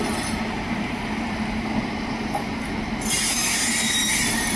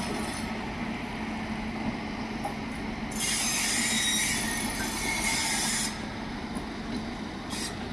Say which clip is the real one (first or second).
second